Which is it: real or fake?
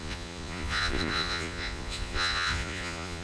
fake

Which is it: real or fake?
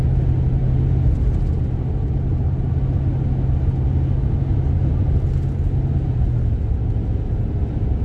real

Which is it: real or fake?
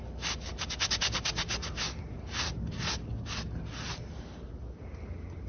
real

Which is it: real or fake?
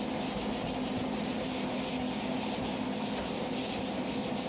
real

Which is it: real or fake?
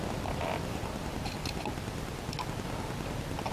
real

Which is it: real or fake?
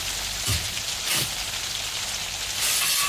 real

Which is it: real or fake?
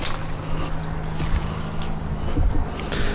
real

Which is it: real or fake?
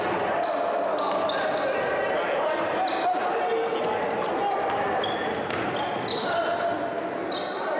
real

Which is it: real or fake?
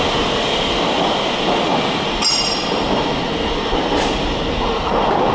real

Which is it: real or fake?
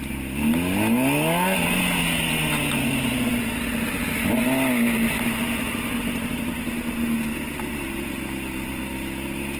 real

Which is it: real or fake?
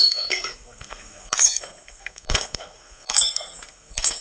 fake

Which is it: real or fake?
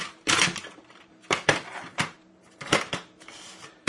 fake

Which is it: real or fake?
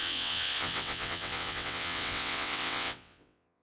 fake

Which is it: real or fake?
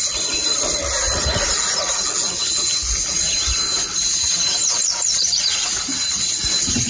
real